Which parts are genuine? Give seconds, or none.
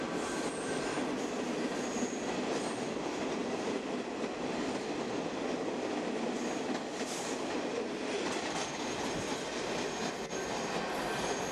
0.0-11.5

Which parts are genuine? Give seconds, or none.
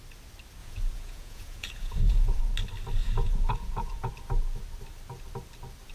0.0-0.6; 2.4-3.0; 4.1-5.9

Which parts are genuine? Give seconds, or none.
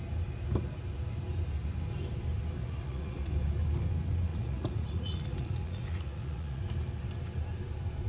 0.0-2.6; 3.3-4.3; 6.6-8.1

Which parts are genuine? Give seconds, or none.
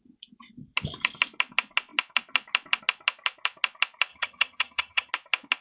0.0-4.1; 5.1-5.6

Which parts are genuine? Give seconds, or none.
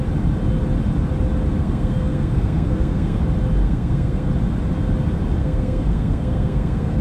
0.0-1.6; 3.2-3.6; 4.3-5.4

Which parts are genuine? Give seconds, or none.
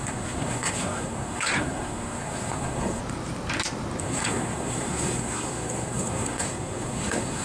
3.0-4.0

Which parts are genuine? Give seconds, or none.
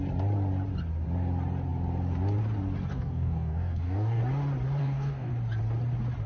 0.0-2.9; 4.2-4.8; 5.3-6.3